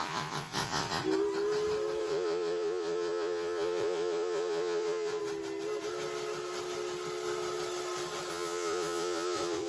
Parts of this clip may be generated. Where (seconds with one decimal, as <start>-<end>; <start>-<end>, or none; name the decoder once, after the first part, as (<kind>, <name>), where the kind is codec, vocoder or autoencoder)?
0.0-1.0 (vocoder, Vocos); 2.0-5.2; 8.3-9.7

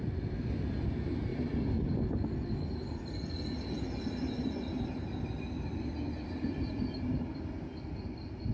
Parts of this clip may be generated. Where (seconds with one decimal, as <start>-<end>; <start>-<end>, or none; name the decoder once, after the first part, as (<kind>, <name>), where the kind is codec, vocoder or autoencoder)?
none

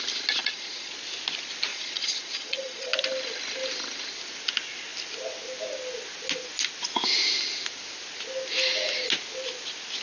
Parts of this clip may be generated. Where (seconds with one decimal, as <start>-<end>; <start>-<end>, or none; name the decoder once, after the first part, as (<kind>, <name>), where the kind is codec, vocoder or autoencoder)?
0.4-0.9 (vocoder, Vocos); 1.7-2.9

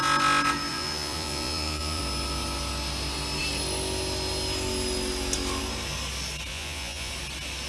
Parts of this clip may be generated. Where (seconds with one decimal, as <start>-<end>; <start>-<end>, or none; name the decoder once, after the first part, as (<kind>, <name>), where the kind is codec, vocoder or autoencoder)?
0.7-2.0 (vocoder, Vocos); 6.5-7.1

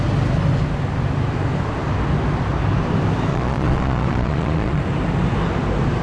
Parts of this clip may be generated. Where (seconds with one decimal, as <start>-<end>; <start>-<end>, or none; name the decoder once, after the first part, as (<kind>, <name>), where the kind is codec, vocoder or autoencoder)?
3.3-4.8 (vocoder, Vocos)

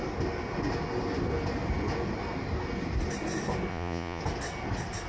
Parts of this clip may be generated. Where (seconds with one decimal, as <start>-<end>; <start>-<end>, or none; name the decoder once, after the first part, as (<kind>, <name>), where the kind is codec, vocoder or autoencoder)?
3.7-4.2 (vocoder, Vocos)